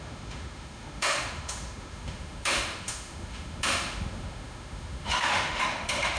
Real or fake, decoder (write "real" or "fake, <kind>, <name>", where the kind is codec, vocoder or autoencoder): fake, autoencoder, DAC-VAE